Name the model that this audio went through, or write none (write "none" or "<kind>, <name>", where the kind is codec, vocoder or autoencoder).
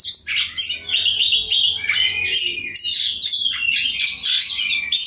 none